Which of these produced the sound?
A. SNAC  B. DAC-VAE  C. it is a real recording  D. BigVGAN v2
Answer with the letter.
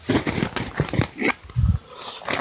C